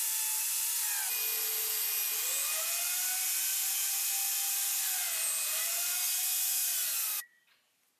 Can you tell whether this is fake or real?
real